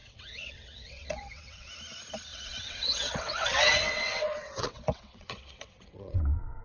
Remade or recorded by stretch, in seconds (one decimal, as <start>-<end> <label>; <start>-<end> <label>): 0.0-1.7 remade; 1.7-2.3 recorded; 2.3-6.6 remade